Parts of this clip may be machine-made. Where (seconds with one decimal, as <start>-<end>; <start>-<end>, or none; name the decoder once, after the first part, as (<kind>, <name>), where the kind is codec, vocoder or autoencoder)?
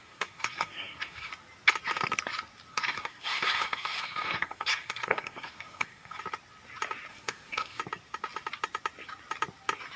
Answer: 0.0-1.3 (codec, SNAC); 2.7-6.2; 7.1-7.8